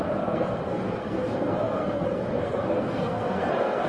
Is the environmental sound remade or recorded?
remade